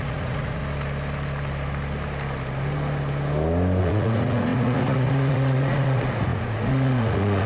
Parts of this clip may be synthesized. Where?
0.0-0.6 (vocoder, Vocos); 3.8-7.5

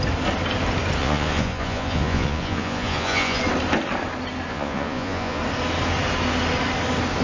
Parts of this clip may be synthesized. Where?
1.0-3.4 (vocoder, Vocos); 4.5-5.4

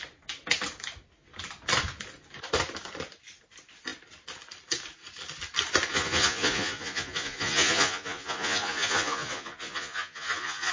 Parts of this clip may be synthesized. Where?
5.9-10.7 (vocoder, Vocos)